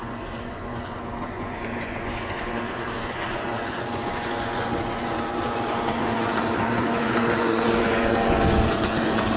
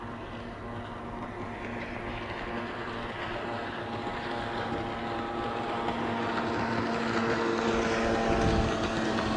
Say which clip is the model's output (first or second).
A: first